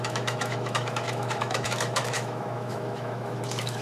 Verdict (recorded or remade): remade